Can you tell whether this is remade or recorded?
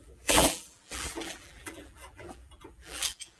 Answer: remade